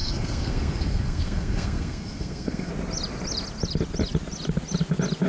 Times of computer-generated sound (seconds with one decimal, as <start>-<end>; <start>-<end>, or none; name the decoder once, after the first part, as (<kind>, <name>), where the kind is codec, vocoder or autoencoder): 0.0-2.7 (codec, SNAC)